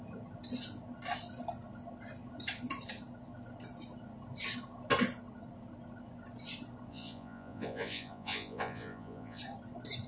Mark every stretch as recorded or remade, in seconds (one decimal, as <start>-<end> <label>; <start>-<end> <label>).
0.0-6.9 recorded; 6.9-9.4 remade; 9.4-10.1 recorded